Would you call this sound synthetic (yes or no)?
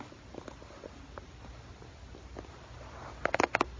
no